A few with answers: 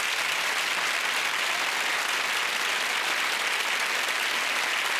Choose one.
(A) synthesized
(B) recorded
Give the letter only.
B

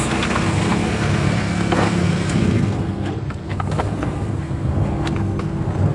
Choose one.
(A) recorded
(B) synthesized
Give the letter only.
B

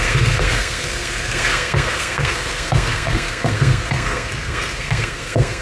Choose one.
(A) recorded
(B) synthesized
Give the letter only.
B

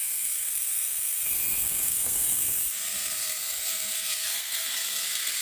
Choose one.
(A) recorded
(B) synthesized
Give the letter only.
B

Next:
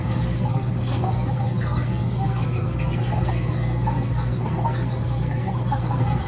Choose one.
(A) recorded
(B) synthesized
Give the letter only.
B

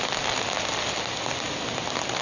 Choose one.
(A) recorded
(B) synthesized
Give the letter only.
A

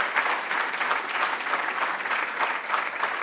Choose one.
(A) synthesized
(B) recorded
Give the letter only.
B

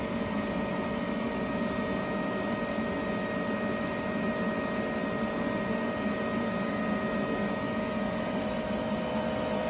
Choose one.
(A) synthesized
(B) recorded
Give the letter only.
B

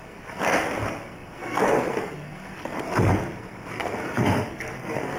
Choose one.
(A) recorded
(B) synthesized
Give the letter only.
B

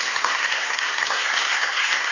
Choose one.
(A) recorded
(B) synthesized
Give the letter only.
B